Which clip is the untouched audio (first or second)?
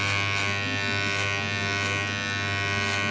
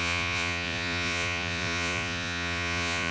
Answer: first